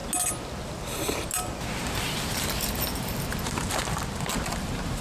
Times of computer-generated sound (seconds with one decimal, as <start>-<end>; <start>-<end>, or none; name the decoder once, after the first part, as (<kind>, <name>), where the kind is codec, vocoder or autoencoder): 3.0-3.8 (vocoder, BigVGAN v2); 4.5-5.0